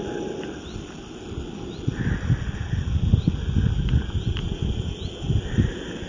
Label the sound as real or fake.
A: real